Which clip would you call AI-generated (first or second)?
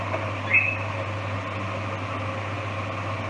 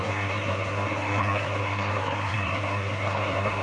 second